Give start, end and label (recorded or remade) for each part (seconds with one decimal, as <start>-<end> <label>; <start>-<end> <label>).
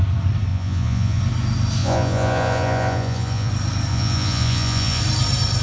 0.0-0.5 recorded; 0.5-1.2 remade; 1.2-1.8 recorded; 1.8-3.5 remade; 3.5-3.9 recorded; 3.9-5.0 remade; 5.0-5.6 recorded